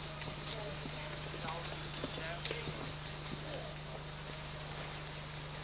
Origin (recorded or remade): recorded